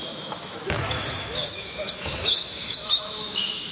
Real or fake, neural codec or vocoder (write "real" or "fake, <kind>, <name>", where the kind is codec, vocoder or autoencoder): fake, autoencoder, DAC-VAE